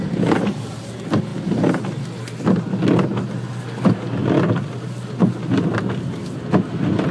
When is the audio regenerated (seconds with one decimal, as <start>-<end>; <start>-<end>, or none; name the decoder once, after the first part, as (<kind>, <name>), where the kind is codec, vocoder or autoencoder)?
none